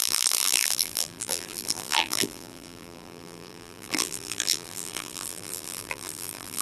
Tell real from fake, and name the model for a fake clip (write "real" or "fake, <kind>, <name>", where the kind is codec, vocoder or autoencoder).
fake, vocoder, BigVGAN v2